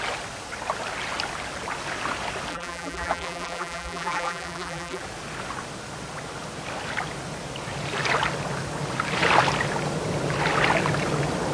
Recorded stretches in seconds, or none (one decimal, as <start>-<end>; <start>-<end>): 0.0-2.5; 5.0-11.5

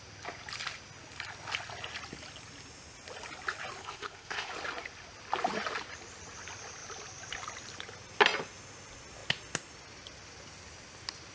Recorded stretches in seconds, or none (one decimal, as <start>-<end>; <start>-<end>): 0.0-3.8; 4.5-11.3

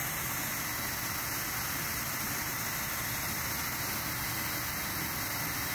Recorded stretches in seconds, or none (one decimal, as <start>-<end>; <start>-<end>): 0.0-5.7

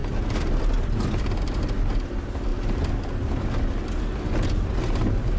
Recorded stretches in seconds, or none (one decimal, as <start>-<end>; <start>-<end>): 0.0-5.4

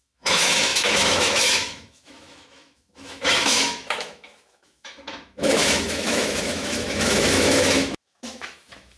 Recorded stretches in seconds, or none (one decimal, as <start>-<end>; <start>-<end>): none

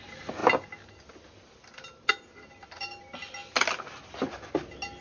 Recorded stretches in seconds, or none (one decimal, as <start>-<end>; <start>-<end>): 0.0-5.0